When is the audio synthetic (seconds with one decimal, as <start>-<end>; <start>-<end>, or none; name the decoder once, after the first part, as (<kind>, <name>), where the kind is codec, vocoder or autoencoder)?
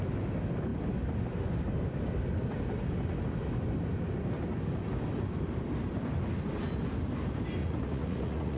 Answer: 7.6-8.6 (vocoder, Vocos)